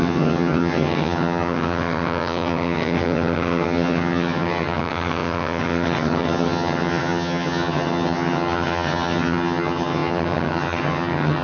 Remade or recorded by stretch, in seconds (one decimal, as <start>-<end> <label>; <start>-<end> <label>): 0.0-11.4 remade